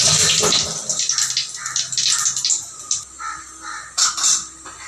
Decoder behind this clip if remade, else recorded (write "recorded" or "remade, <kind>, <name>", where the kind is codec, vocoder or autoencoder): recorded